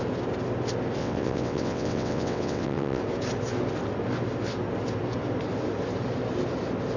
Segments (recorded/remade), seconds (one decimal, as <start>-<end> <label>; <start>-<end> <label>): 0.0-1.0 recorded; 1.0-3.0 remade; 3.0-7.0 recorded